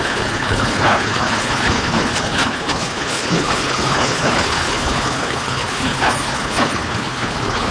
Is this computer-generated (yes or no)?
yes